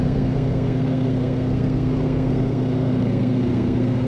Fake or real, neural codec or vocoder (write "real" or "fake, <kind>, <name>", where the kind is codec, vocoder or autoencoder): fake, codec, SNAC